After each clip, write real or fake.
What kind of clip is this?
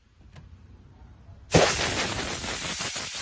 real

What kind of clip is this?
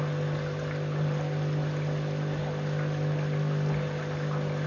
real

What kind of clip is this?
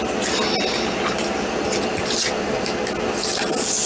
real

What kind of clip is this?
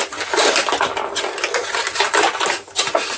real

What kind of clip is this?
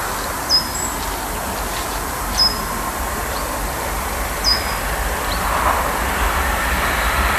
real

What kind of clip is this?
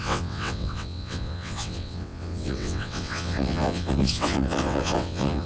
fake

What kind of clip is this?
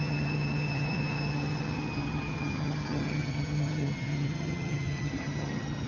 fake